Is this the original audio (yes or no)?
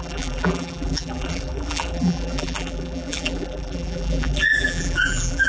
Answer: no